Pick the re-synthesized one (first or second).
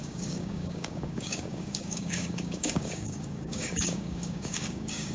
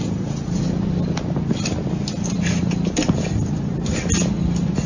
first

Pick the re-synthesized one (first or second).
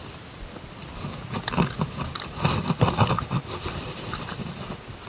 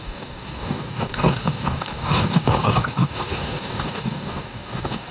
second